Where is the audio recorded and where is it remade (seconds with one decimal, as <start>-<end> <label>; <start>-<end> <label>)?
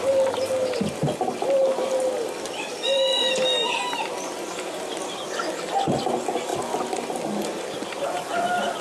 0.0-8.8 recorded